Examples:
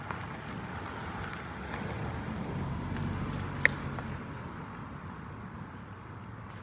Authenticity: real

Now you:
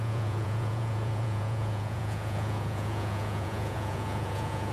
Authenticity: fake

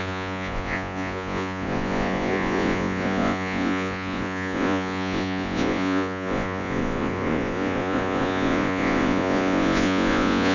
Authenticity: fake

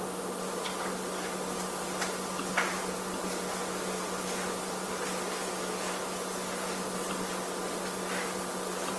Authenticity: real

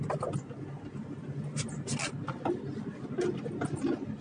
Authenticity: real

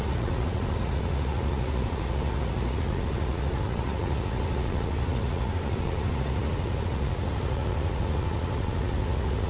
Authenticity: fake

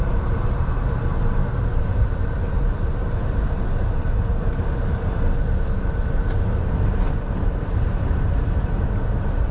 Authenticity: fake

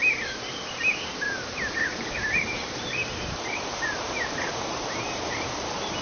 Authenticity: fake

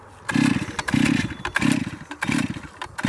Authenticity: real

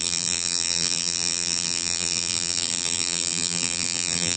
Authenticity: fake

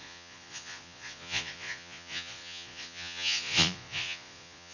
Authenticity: fake